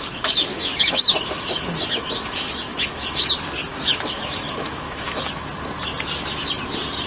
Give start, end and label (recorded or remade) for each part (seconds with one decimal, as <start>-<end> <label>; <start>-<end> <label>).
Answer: 0.0-0.5 recorded; 0.5-3.3 remade; 3.3-3.7 recorded; 3.7-5.3 remade; 5.3-7.1 recorded